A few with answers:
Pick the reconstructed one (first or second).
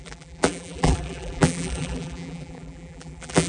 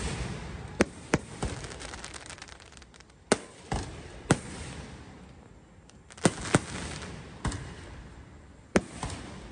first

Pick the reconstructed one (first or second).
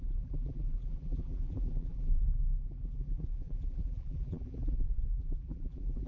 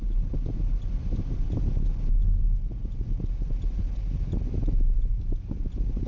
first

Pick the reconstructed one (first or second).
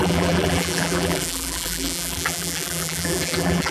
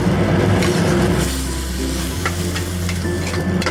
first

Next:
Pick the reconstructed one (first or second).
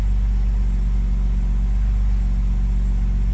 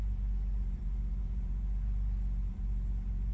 second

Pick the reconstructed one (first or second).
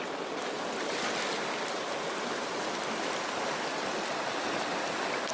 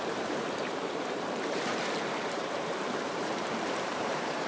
second